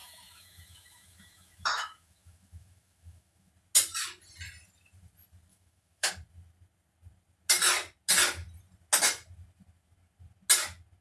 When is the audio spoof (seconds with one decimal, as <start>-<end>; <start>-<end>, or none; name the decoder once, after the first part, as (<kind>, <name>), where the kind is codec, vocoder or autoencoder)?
0.0-3.5 (autoencoder, DAC-VAE); 5.5-6.1